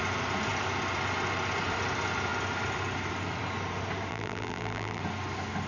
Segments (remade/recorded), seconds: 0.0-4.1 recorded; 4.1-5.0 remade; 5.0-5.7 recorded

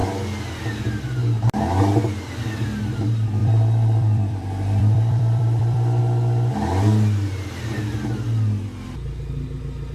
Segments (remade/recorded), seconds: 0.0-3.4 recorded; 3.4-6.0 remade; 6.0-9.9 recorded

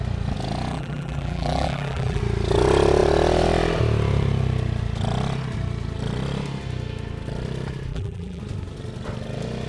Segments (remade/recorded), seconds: 0.0-0.7 recorded; 0.7-2.2 remade; 2.2-7.9 recorded; 7.9-8.4 remade; 8.4-9.7 recorded